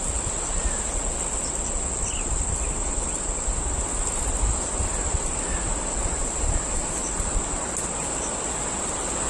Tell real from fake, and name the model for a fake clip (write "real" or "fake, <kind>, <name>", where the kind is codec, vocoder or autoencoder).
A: real